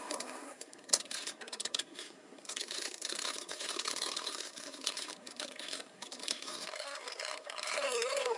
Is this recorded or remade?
remade